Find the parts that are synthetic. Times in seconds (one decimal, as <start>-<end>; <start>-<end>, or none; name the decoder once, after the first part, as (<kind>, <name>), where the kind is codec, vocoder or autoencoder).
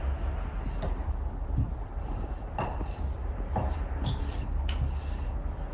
1.0-4.2 (vocoder, BigVGAN v2)